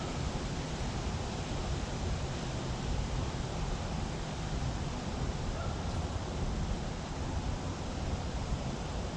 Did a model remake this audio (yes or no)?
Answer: no